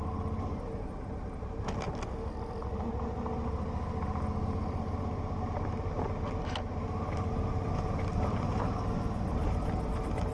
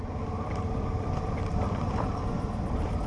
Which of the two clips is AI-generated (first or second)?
second